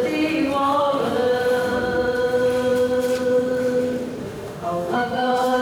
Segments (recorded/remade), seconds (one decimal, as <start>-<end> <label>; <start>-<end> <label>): 0.0-0.6 recorded; 0.6-1.1 remade; 1.1-4.2 recorded; 4.2-5.6 remade